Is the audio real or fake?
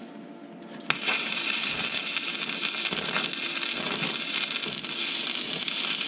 real